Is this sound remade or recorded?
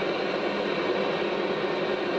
recorded